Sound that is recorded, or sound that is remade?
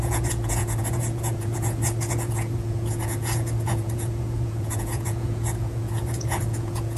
remade